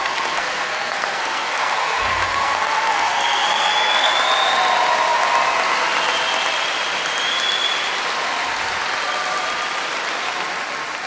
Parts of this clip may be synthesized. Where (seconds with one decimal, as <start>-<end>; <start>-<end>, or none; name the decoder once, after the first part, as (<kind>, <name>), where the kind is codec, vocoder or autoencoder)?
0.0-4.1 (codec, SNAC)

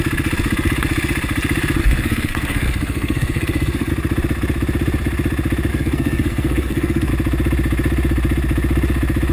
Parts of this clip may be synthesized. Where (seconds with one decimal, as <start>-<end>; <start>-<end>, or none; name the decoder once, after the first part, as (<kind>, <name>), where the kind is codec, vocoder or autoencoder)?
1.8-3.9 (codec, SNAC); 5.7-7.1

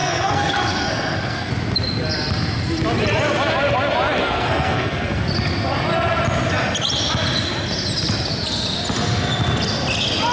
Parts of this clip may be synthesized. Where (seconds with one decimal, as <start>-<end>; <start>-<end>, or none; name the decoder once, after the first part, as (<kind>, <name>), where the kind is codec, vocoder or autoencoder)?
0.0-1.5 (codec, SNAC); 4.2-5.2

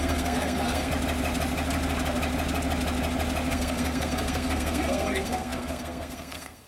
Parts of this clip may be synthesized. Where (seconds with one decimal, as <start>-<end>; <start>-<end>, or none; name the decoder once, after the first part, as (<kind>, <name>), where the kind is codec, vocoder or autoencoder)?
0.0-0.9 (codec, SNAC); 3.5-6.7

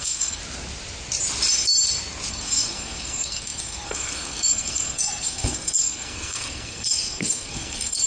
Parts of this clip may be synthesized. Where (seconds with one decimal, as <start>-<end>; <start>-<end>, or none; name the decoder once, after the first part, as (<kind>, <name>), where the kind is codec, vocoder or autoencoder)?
0.0-0.4 (codec, SNAC); 2.3-8.1

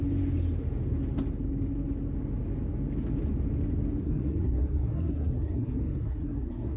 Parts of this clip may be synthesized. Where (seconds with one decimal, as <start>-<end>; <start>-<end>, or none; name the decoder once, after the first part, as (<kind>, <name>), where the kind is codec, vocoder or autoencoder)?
4.0-6.8 (codec, SNAC)

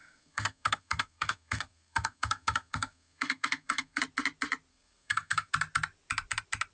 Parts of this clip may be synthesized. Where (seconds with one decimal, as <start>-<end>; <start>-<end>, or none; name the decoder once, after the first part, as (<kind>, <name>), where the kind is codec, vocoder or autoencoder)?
0.0-4.0 (codec, SNAC); 4.7-5.5